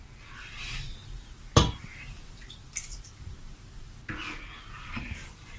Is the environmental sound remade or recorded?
recorded